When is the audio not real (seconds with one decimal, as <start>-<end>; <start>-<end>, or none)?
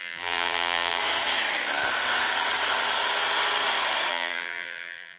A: 0.0-1.0; 4.1-5.2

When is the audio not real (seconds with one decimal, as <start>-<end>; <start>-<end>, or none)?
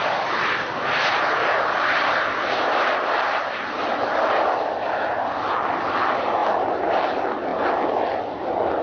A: 0.0-3.8; 6.4-6.9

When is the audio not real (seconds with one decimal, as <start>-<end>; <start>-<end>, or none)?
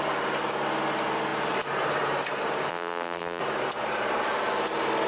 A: 2.7-3.4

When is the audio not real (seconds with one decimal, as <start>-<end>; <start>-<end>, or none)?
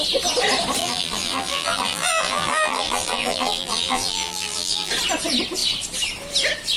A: 0.8-4.9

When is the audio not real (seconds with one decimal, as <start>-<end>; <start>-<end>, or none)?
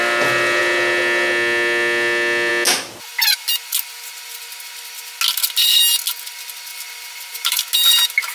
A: 6.7-7.6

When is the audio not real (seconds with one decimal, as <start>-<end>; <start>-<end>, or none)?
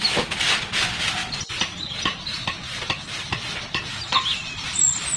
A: none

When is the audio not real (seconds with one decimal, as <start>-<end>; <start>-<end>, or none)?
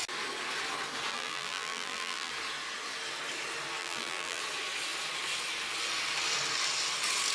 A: 1.1-2.3; 3.8-4.4